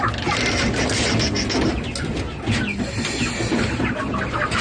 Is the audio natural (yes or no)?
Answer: yes